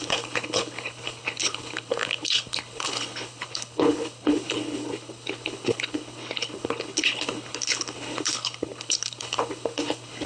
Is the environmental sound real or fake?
fake